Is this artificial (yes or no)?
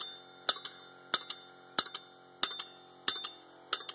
no